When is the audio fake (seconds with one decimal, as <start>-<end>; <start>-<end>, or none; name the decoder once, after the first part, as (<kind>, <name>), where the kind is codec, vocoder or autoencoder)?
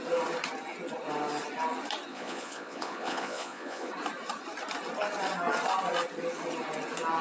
2.1-3.9 (vocoder, Vocos)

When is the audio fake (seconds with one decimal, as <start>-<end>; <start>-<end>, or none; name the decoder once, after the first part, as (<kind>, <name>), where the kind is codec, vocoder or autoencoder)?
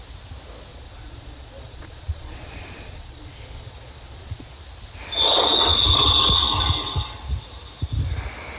0.7-4.6 (vocoder, Vocos)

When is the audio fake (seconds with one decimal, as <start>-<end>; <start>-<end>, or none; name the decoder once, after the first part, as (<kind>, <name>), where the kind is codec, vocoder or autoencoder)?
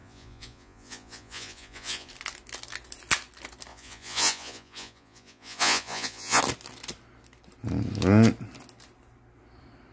0.0-2.1 (vocoder, Vocos); 3.7-6.4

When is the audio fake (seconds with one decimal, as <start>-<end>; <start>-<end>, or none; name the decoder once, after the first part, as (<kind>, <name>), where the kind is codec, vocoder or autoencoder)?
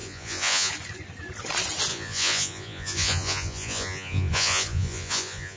0.0-0.7 (vocoder, Vocos); 1.9-5.6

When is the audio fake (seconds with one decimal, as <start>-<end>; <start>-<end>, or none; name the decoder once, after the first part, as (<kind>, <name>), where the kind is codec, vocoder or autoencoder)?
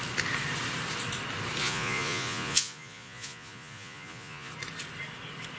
1.6-4.5 (vocoder, Vocos)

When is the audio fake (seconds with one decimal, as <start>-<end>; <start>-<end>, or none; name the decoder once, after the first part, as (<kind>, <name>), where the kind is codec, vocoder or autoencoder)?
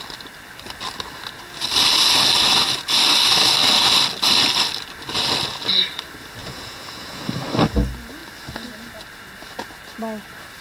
6.4-7.2 (vocoder, Vocos)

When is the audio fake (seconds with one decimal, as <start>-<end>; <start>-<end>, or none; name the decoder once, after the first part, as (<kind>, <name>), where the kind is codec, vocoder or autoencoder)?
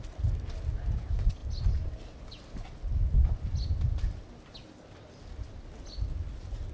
none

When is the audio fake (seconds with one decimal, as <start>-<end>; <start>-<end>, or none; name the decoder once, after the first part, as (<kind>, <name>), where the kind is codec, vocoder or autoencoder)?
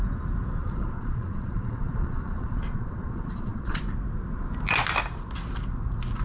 0.6-3.8 (vocoder, Vocos)